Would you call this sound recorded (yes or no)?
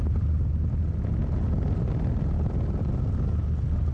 yes